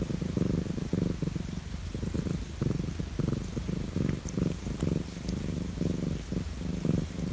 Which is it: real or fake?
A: real